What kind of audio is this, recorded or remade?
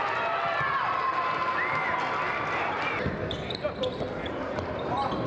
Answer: recorded